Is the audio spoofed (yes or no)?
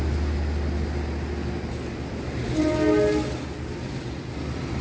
no